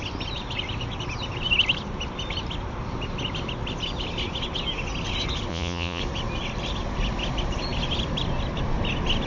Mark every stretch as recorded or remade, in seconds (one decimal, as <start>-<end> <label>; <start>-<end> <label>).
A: 0.0-5.5 recorded; 5.5-6.0 remade; 6.0-9.3 recorded